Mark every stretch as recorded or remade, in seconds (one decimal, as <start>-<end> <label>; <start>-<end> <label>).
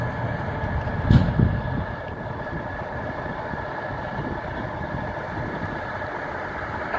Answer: 0.0-7.0 recorded